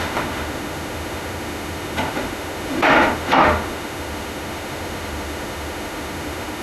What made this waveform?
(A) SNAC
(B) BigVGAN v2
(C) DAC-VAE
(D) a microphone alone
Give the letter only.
C